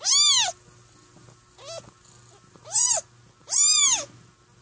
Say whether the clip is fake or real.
real